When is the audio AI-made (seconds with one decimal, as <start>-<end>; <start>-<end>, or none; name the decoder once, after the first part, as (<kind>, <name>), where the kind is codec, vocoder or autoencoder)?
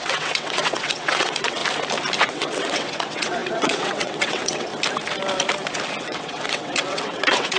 0.0-1.6 (vocoder, WaveNeXt); 2.2-4.7; 6.0-7.6